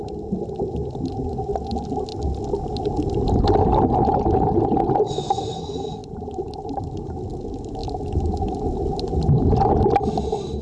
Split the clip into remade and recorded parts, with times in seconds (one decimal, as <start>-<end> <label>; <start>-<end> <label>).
0.0-6.0 recorded; 6.0-7.1 remade; 7.1-10.6 recorded

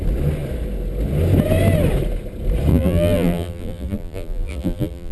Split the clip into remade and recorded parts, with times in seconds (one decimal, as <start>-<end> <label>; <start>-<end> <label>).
0.0-2.7 recorded; 2.7-5.1 remade

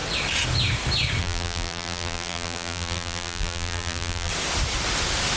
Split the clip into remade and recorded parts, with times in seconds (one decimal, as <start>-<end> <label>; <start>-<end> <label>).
0.0-1.2 recorded; 1.2-4.3 remade; 4.3-5.4 recorded

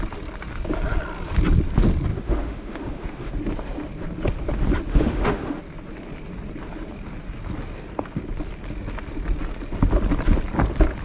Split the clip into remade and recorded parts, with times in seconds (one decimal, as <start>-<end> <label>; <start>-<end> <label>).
0.0-2.1 recorded; 2.1-3.3 remade; 3.3-4.9 recorded; 4.9-5.6 remade; 5.6-11.0 recorded

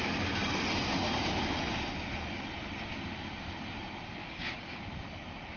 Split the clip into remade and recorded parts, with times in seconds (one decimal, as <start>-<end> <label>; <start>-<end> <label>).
0.0-4.2 recorded; 4.2-4.8 remade; 4.8-5.6 recorded